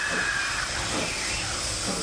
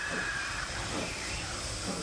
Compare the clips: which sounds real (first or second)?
first